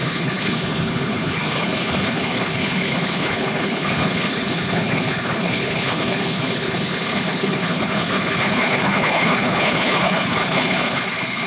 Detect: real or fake fake